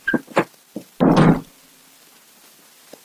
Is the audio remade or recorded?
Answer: recorded